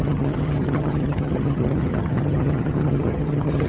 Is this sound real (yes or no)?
no